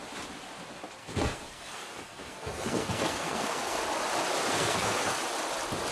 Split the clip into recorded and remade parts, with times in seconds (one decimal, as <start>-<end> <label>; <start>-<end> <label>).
0.0-1.0 recorded; 1.0-3.8 remade; 3.8-4.5 recorded; 4.5-5.2 remade; 5.2-5.9 recorded